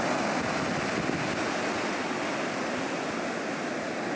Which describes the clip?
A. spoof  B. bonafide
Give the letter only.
B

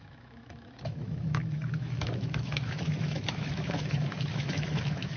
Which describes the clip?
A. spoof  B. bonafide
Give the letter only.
A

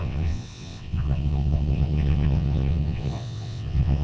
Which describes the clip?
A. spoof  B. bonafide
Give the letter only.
A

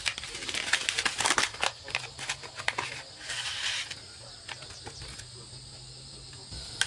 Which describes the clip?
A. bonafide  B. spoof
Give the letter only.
A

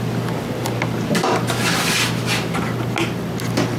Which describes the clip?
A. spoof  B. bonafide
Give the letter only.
B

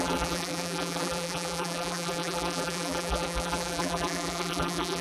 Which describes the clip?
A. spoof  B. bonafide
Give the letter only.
A